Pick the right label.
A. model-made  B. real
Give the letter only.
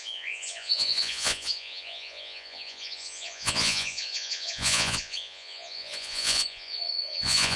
A